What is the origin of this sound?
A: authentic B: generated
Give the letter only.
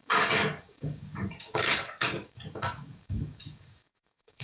B